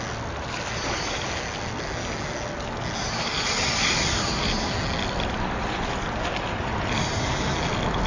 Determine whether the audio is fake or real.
real